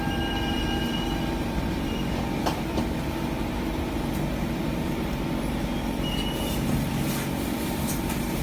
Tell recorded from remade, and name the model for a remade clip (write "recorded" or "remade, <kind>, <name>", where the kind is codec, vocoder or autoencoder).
remade, vocoder, BigVGAN v2